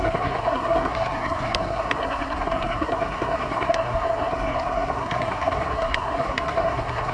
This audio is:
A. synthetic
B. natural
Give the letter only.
A